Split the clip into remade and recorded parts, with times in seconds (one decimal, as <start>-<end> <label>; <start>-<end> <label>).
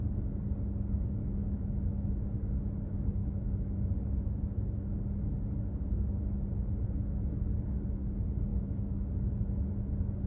0.0-1.4 recorded; 1.4-2.1 remade; 2.1-3.2 recorded; 3.2-3.8 remade; 3.8-8.5 recorded; 8.5-9.1 remade; 9.1-10.3 recorded